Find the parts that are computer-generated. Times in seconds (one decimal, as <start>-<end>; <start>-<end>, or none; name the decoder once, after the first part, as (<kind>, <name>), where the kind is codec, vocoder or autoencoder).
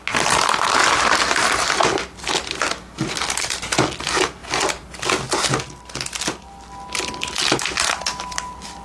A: none